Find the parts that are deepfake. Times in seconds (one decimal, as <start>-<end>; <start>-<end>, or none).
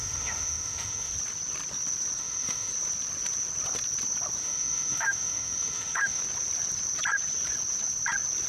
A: 0.0-1.1; 2.2-2.7; 4.4-6.2